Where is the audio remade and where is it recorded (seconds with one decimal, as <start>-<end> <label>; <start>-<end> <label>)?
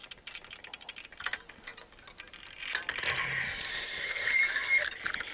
0.0-3.7 recorded; 3.7-4.3 remade; 4.3-5.3 recorded